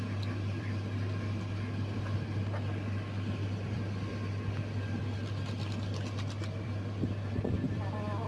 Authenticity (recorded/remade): remade